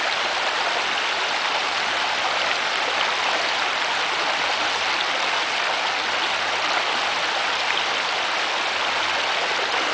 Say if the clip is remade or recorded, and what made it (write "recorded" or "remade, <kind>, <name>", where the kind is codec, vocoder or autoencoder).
recorded